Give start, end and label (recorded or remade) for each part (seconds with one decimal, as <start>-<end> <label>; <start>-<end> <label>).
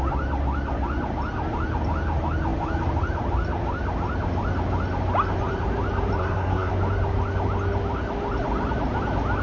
0.0-6.2 recorded; 6.2-6.7 remade; 6.7-9.4 recorded